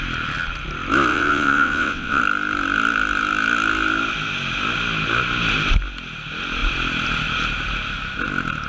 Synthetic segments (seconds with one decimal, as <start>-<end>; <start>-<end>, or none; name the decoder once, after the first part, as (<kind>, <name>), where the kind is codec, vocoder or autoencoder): 1.1-2.2 (vocoder, WaveNeXt)